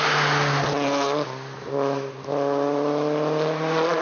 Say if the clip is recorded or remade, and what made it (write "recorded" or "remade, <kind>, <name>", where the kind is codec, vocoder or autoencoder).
recorded